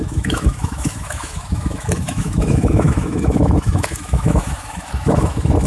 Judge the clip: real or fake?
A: fake